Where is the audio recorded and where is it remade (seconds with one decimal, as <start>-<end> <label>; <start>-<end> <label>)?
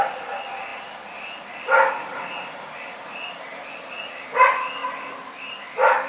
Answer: 0.0-6.1 recorded